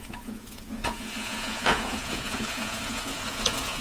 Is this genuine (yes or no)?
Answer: no